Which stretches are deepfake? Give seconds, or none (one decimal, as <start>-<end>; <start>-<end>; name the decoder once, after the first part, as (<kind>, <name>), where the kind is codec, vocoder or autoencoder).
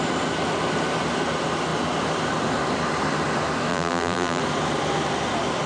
3.7-4.4 (vocoder, BigVGAN v2)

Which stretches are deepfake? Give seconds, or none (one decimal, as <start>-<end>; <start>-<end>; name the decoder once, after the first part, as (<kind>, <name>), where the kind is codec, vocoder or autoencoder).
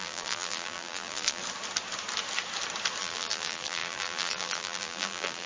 0.0-1.4 (vocoder, BigVGAN v2); 3.0-5.5